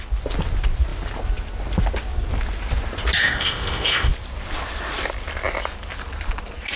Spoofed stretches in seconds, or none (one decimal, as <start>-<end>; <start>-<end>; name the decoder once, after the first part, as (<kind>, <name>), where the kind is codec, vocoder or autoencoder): 3.2-4.1 (codec, ZipCodec)